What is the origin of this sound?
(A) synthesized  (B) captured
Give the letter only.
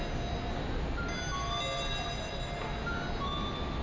B